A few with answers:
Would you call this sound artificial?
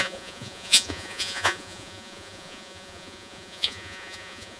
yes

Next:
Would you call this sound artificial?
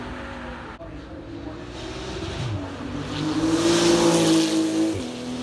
no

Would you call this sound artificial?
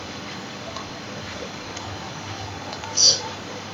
yes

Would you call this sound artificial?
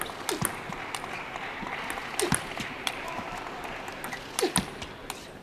no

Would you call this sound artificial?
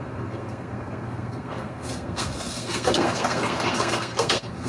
yes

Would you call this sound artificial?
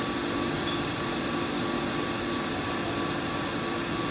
no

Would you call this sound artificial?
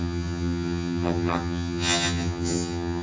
yes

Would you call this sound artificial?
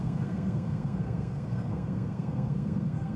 yes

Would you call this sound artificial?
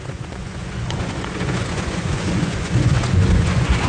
yes